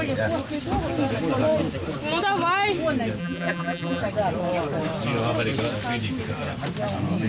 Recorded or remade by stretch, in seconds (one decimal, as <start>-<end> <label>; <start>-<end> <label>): 0.0-3.2 recorded; 3.2-4.0 remade; 4.0-7.3 recorded